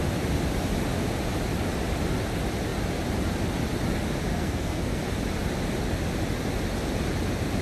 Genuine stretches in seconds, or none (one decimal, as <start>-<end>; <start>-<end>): 0.0-4.3; 5.0-7.6